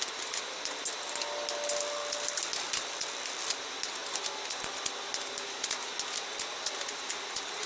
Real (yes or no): yes